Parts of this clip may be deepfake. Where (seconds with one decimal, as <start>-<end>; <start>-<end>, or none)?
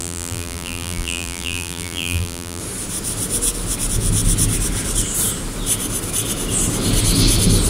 0.0-2.6